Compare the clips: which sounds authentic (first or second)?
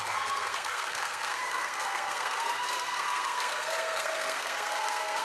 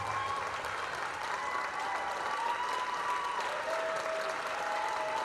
second